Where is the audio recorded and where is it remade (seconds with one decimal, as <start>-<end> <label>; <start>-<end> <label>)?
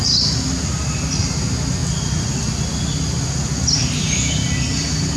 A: 0.0-5.2 recorded